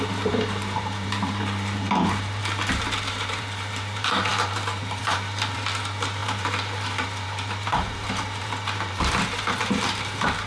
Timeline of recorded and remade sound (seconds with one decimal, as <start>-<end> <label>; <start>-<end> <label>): 0.0-2.4 remade; 2.4-3.1 recorded; 3.1-10.5 remade